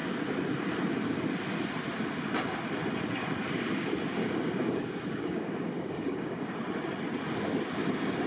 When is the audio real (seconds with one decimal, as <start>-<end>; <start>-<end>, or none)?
0.0-4.2; 6.5-8.3